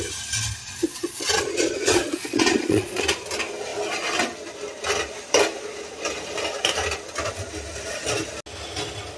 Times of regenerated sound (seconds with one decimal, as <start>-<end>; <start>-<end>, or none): 0.6-3.0